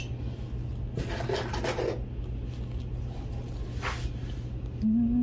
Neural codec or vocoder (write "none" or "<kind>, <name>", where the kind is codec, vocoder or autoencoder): none